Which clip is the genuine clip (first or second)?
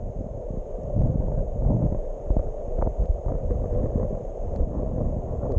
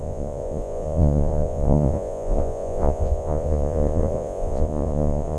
first